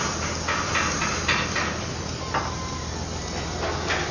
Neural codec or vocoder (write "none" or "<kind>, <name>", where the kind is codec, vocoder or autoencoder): none